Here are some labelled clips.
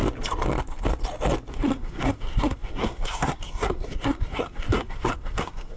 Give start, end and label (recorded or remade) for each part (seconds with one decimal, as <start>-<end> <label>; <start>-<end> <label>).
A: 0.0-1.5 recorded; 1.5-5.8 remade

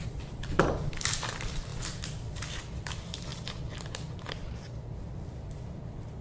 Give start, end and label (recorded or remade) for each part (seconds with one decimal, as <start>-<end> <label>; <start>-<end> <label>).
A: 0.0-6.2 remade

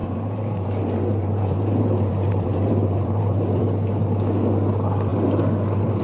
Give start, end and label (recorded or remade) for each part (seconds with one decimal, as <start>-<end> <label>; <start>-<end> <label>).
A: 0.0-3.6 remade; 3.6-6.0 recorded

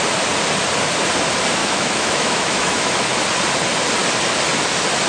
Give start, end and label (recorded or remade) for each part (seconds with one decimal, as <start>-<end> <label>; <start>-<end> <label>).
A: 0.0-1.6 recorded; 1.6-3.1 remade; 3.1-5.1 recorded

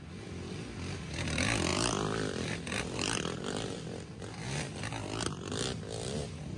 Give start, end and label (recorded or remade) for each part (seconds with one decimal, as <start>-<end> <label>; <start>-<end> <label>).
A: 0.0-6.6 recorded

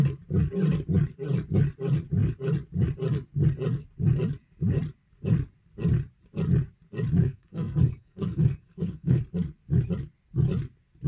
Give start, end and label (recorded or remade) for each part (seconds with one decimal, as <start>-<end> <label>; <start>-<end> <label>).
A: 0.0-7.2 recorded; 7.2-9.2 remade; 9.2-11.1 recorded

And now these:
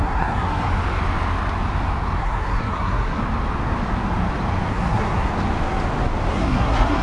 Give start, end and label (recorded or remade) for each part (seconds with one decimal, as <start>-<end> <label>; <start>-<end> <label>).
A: 0.0-0.7 remade; 0.7-2.2 recorded; 2.2-3.2 remade; 3.2-4.7 recorded; 4.7-5.3 remade; 5.3-6.3 recorded; 6.3-7.0 remade

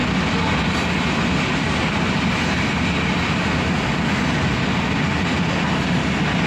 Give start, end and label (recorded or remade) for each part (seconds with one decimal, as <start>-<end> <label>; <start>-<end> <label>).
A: 0.0-6.5 recorded